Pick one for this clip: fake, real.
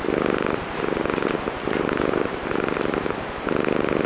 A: real